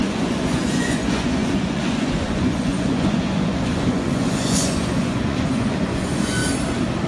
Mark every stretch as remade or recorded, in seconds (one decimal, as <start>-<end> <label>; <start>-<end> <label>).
0.0-6.4 remade; 6.4-7.1 recorded